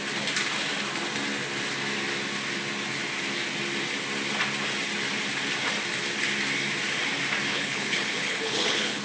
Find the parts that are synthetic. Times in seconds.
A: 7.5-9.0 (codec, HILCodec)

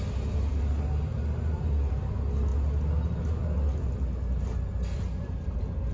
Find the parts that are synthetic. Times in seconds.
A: none

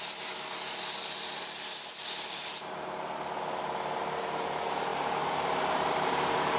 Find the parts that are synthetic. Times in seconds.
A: none

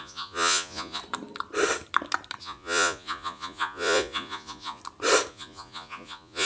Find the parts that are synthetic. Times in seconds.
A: 0.0-1.0 (vocoder, Vocos); 2.4-4.8; 5.3-6.5

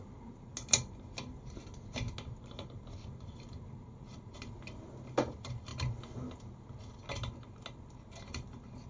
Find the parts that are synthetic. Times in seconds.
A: none